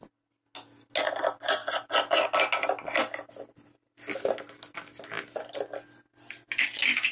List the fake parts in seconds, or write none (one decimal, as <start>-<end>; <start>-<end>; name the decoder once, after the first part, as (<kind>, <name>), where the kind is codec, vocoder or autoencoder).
none